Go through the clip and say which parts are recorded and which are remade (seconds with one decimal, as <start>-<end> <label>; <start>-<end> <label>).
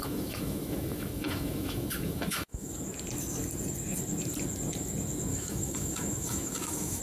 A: 0.0-2.7 remade; 2.7-5.3 recorded; 5.3-7.0 remade